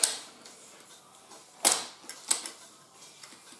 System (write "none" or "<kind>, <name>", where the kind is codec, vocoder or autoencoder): none